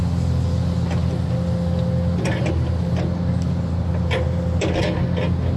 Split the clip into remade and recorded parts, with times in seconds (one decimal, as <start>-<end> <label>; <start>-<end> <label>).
0.0-5.6 recorded

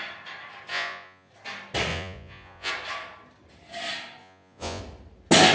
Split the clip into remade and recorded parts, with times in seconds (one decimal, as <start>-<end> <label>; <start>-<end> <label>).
0.0-0.7 recorded; 0.7-1.3 remade; 1.3-1.9 recorded; 1.9-2.7 remade; 2.7-4.2 recorded; 4.2-4.8 remade; 4.8-5.5 recorded

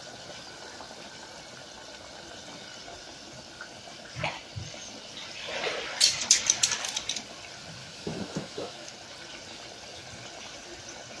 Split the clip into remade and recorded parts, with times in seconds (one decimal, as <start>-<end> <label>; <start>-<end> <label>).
0.0-7.8 recorded; 7.8-8.9 remade; 8.9-11.2 recorded

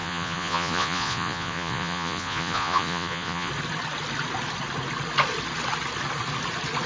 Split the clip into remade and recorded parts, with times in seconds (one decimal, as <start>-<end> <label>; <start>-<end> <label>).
0.0-3.5 remade; 3.5-6.9 recorded

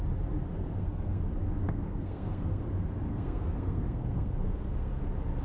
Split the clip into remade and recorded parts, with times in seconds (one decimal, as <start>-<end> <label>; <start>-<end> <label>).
0.0-0.6 recorded; 0.6-1.2 remade; 1.2-1.6 recorded; 1.6-2.6 remade; 2.6-3.1 recorded; 3.1-5.0 remade; 5.0-5.4 recorded

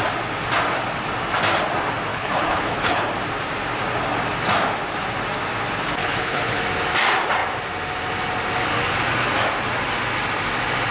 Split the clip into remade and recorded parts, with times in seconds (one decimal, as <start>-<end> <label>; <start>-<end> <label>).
0.0-2.1 recorded; 2.1-3.1 remade; 3.1-6.0 recorded; 6.0-6.6 remade; 6.6-10.9 recorded

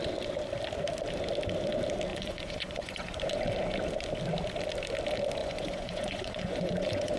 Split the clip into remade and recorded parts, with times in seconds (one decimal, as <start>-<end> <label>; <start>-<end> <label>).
0.0-2.1 recorded; 2.1-3.5 remade; 3.5-5.4 recorded; 5.4-7.2 remade

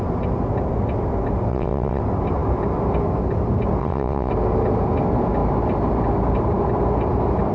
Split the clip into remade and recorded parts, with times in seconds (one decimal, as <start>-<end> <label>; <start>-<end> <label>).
0.0-1.5 recorded; 1.5-2.0 remade; 2.0-3.8 recorded; 3.8-4.3 remade; 4.3-7.5 recorded